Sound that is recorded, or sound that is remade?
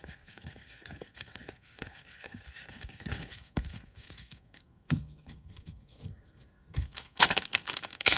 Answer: remade